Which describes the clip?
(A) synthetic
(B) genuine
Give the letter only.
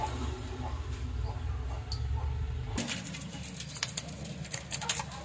B